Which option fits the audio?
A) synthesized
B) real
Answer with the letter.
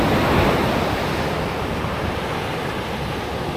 B